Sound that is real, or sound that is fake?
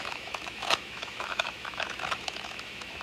fake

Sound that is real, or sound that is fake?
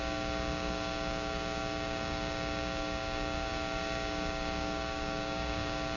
fake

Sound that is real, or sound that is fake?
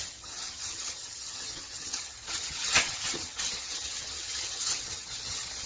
fake